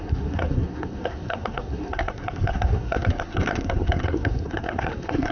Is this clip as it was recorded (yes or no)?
no